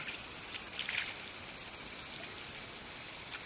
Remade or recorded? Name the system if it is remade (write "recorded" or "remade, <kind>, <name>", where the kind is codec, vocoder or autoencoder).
recorded